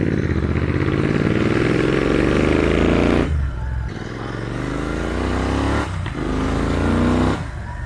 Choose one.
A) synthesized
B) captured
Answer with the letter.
B